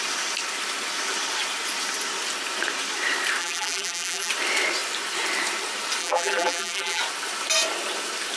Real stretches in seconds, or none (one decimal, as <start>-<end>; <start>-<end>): 0.0-3.4; 4.3-6.0; 7.0-8.4